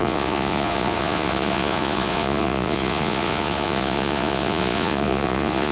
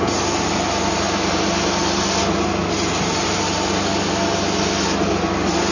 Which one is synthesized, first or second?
first